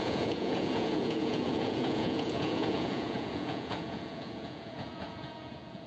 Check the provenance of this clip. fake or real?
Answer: fake